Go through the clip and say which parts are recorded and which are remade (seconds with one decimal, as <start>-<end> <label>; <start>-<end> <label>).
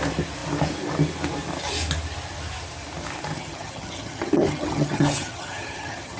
0.0-3.3 recorded; 3.3-6.2 remade